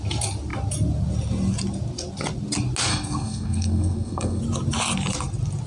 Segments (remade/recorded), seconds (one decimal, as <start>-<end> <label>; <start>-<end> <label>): 0.0-2.9 recorded; 2.9-4.4 remade; 4.4-5.7 recorded